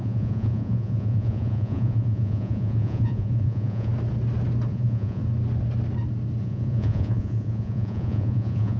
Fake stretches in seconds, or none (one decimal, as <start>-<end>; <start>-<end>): 0.0-3.9; 4.7-5.2; 6.4-8.8

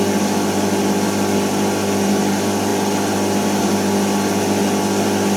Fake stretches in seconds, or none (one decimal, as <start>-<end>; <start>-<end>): none

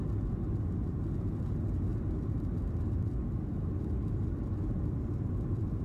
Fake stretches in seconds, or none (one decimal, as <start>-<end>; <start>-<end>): 1.9-5.8

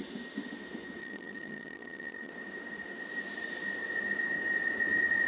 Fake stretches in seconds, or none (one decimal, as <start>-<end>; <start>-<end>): 1.0-2.3

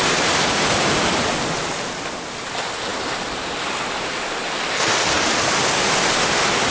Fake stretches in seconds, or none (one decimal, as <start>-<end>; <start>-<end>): none

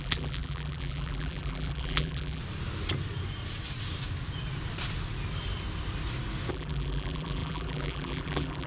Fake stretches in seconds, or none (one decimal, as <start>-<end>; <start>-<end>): 0.0-2.4; 6.5-8.7

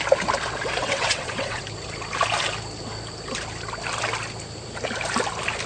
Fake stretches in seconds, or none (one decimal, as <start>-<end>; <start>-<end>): 0.8-1.6